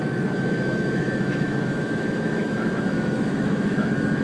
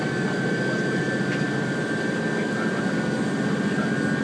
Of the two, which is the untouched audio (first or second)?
second